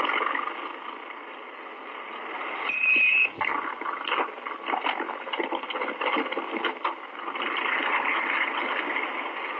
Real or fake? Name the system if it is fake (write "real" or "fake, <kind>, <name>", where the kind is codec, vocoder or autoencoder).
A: real